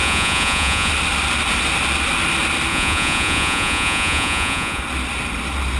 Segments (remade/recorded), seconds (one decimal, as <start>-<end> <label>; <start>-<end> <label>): 0.0-0.9 remade; 0.9-2.7 recorded; 2.7-4.8 remade; 4.8-5.8 recorded